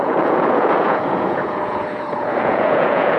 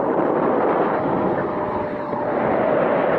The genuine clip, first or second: second